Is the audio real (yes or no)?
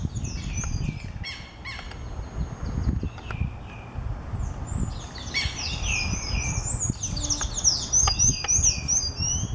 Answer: yes